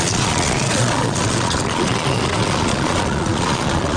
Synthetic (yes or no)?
yes